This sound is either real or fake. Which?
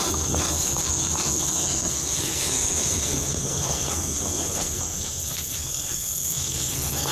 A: fake